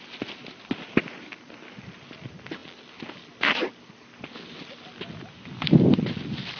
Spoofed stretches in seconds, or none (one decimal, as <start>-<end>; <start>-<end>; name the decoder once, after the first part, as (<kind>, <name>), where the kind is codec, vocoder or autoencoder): none